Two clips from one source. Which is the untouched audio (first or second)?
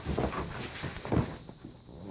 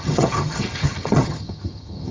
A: first